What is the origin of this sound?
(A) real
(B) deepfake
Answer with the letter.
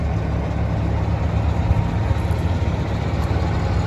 A